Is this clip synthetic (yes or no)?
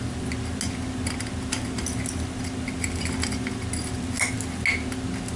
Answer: no